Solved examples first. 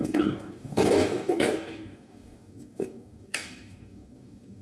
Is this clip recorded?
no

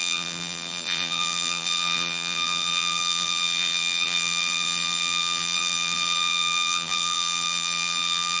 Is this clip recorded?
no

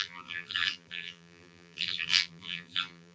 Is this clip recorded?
no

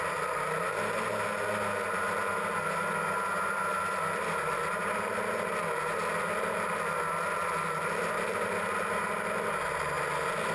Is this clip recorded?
yes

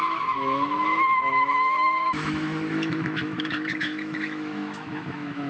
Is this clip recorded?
no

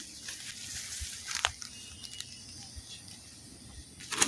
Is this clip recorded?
yes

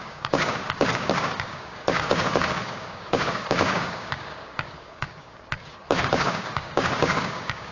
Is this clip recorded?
no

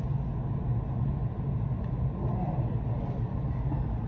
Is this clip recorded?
yes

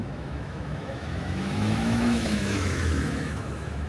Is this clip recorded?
no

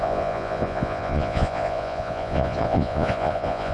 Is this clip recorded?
no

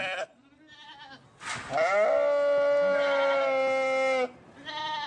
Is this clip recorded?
yes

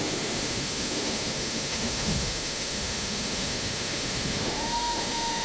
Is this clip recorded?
no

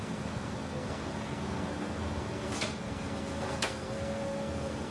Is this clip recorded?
no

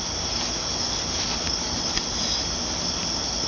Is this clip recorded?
yes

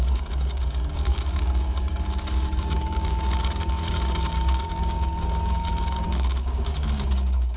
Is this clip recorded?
no